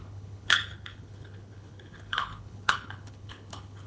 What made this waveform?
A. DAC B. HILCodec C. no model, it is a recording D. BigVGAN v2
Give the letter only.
B